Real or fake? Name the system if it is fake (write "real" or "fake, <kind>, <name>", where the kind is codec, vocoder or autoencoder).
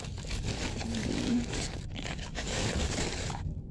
fake, codec, DAC